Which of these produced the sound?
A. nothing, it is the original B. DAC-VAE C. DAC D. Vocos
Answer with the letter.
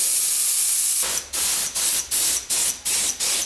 A